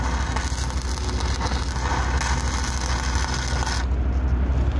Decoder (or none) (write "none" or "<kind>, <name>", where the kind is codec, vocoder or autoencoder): none